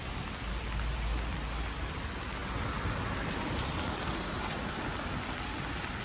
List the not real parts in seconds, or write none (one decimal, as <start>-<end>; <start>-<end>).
none

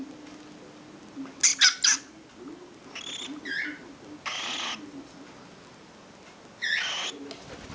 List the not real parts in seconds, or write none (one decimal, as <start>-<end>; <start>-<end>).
none